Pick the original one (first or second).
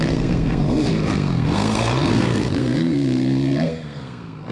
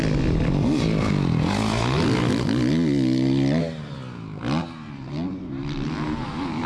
second